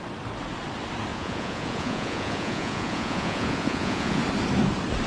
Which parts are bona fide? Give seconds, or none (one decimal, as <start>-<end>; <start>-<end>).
0.0-1.1; 4.2-5.1

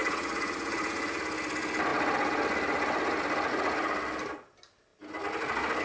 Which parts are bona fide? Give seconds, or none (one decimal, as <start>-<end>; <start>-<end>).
1.2-5.8

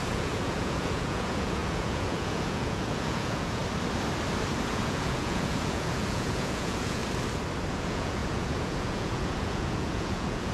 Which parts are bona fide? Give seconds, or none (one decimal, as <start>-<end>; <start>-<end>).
3.6-4.7; 7.0-7.7